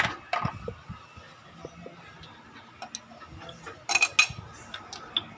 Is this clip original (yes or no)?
yes